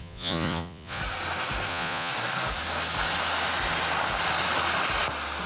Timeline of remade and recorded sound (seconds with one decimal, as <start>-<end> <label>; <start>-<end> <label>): 0.0-1.0 remade; 1.0-1.7 recorded; 1.7-2.1 remade; 2.1-5.5 recorded